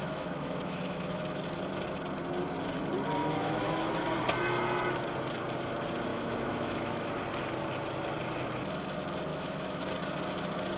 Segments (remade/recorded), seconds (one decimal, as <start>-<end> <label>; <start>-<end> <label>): 0.0-1.4 remade; 1.4-3.2 recorded; 3.2-3.9 remade; 3.9-6.1 recorded; 6.1-7.1 remade; 7.1-9.3 recorded; 9.3-9.8 remade; 9.8-10.8 recorded